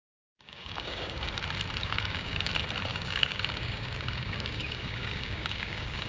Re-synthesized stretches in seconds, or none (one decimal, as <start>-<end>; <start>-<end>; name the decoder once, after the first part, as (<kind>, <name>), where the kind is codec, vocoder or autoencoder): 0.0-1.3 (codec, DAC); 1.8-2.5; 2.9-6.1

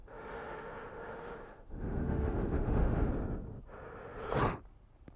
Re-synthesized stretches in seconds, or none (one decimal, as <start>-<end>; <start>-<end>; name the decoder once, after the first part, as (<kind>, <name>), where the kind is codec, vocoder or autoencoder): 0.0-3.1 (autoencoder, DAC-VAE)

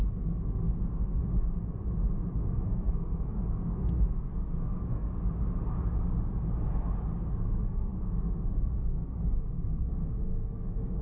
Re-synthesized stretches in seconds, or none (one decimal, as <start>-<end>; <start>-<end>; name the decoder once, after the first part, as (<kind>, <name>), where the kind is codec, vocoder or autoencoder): 0.0-1.2 (codec, SNAC); 2.3-5.1; 7.3-11.0

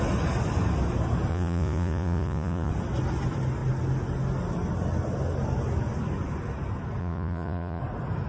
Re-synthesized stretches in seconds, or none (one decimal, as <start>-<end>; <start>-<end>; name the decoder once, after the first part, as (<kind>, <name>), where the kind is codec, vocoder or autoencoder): 1.3-2.7 (vocoder, Vocos); 7.0-7.8